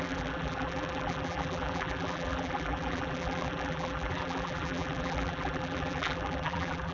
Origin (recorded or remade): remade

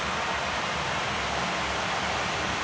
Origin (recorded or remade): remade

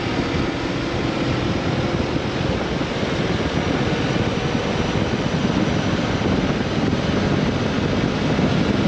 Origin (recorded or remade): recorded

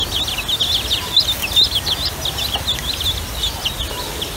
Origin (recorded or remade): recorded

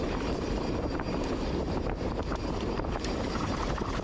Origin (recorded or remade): remade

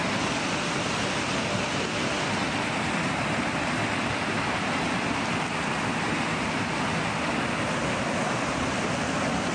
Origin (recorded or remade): recorded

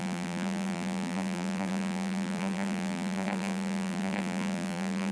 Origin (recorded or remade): remade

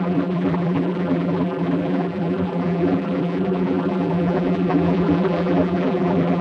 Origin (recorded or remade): remade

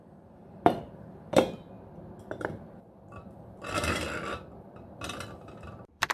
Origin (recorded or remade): remade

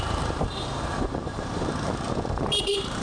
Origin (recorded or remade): remade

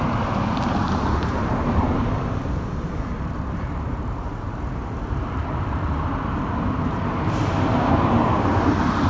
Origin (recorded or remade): remade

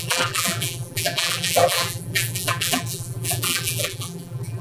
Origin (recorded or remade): remade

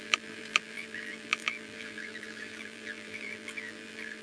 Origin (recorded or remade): remade